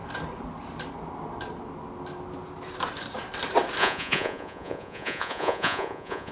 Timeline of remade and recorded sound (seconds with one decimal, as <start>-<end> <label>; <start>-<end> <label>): 0.0-3.8 recorded; 3.8-6.3 remade